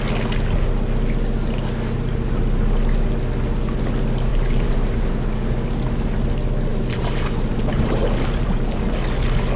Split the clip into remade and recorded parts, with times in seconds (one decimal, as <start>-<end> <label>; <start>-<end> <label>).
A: 0.0-4.3 recorded; 4.3-5.1 remade; 5.1-6.7 recorded; 6.7-8.8 remade; 8.8-9.6 recorded